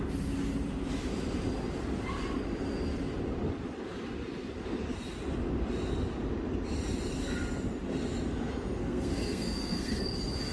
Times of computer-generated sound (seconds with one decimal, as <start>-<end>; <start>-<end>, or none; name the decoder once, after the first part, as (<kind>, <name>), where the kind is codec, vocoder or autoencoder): 8.8-10.0 (codec, SNAC)

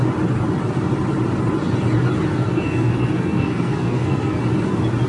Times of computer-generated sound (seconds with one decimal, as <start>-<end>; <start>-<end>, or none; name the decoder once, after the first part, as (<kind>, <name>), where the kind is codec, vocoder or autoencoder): 2.3-4.4 (codec, SNAC)